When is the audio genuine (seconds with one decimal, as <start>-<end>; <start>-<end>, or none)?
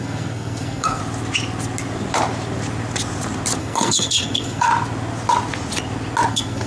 1.0-3.6; 4.7-6.3